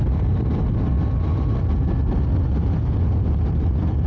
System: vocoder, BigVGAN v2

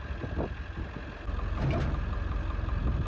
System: none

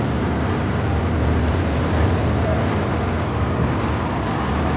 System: vocoder, BigVGAN v2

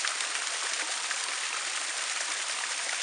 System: none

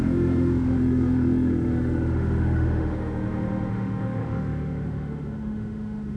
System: autoencoder, DAC-VAE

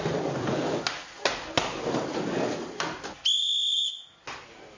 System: none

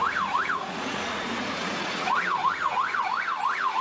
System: vocoder, Vocos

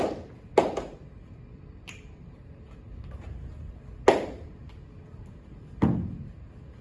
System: none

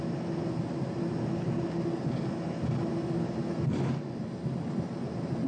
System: none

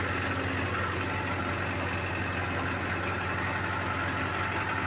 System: none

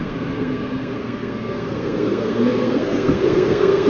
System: codec, SNAC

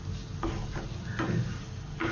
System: none